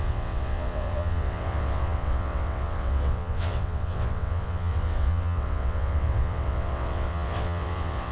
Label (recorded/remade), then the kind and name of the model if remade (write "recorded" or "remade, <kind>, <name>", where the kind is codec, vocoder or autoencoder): remade, vocoder, WaveNeXt